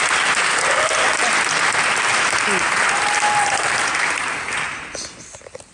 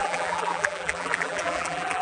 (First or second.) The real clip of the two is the first